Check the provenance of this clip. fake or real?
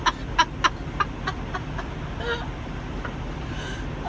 real